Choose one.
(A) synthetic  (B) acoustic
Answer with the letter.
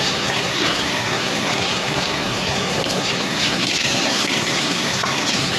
A